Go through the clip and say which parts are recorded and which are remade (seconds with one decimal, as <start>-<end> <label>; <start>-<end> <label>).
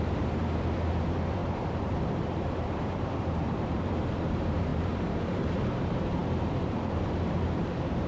0.0-8.1 remade